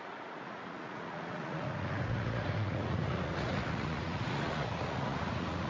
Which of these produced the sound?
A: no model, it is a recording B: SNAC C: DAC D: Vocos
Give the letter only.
D